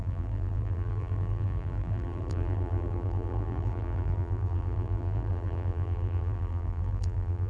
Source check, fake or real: fake